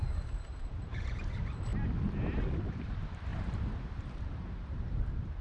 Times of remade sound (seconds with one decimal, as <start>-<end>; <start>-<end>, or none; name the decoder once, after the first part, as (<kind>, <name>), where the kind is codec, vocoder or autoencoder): 0.0-1.7 (vocoder, BigVGAN v2); 2.7-5.4